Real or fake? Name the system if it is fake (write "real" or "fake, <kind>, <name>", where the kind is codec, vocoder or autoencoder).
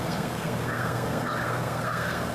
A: fake, codec, SNAC